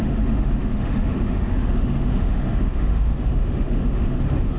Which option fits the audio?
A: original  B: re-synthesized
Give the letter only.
B